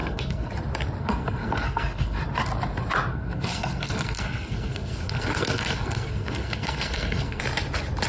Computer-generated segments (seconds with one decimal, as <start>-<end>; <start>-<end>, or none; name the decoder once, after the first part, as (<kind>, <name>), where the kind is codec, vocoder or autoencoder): 0.0-0.5 (codec, SNAC); 1.0-2.2; 3.1-7.4